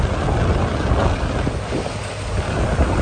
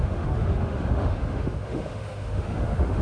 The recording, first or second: first